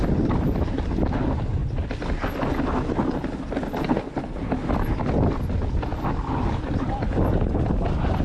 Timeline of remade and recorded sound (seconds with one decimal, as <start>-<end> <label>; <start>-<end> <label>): 0.0-8.2 recorded